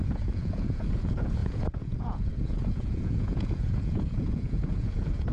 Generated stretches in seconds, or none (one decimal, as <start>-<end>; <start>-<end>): 0.0-5.3